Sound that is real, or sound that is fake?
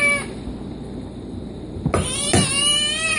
real